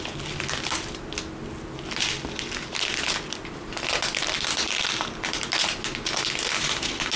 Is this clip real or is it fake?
real